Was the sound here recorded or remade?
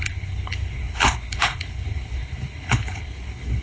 remade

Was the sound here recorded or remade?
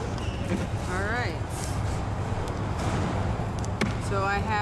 recorded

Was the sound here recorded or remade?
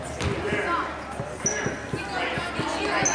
recorded